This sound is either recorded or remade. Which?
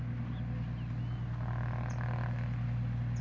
recorded